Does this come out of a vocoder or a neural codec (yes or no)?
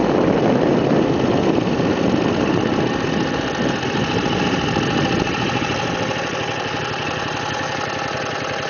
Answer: no